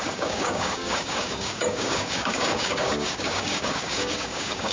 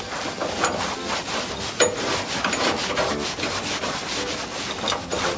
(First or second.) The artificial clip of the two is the first